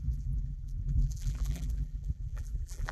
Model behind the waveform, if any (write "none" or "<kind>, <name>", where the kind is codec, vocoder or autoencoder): vocoder, BigVGAN v2